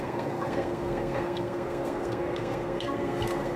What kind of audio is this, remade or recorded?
remade